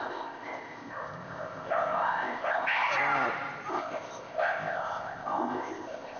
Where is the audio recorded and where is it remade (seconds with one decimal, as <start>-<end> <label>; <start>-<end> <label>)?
0.0-2.9 remade; 2.9-3.7 recorded; 3.7-6.2 remade